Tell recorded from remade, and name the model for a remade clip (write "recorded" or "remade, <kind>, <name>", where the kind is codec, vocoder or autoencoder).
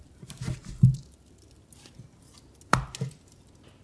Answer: recorded